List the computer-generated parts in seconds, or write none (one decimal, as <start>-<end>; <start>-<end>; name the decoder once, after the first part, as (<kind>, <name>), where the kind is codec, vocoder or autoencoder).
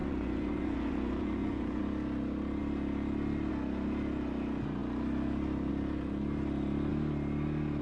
0.0-1.8 (vocoder, Vocos)